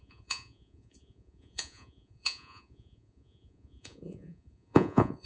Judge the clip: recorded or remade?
remade